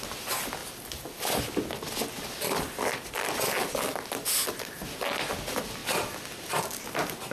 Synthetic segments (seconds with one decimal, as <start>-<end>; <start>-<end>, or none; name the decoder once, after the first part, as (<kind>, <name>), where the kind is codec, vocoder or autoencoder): none